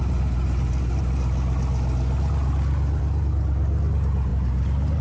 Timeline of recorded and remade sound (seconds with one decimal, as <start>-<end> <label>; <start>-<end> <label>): 0.0-5.0 recorded